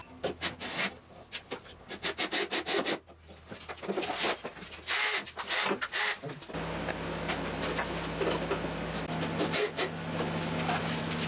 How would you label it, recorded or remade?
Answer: recorded